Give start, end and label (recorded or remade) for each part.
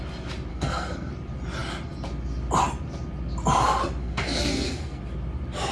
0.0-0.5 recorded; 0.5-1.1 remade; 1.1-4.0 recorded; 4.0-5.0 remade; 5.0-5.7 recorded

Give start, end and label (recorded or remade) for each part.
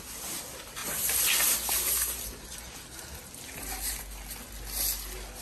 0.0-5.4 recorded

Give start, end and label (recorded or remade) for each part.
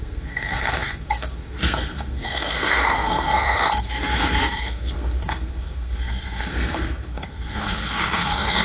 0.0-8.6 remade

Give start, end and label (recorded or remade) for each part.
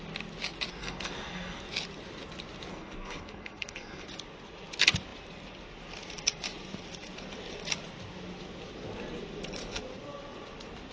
0.0-0.8 recorded; 0.8-1.6 remade; 1.6-2.7 recorded; 2.7-4.1 remade; 4.1-10.9 recorded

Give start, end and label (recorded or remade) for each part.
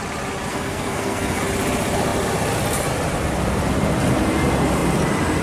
0.0-0.5 recorded; 0.5-1.4 remade; 1.4-5.4 recorded